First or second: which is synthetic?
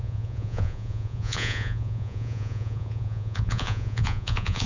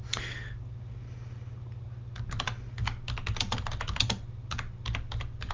first